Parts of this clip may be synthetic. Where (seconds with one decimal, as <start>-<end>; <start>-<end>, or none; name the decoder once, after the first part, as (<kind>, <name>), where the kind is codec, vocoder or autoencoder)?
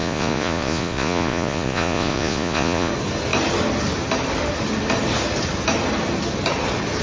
0.0-2.9 (vocoder, Vocos)